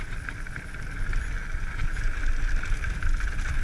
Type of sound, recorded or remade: recorded